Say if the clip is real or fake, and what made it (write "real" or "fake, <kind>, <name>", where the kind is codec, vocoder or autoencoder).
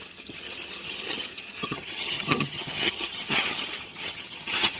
fake, vocoder, HiFi-GAN